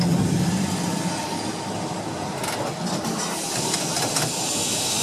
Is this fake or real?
real